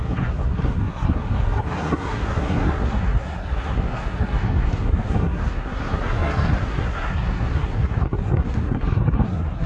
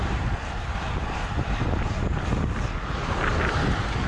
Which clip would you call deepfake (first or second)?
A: first